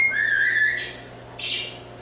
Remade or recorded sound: recorded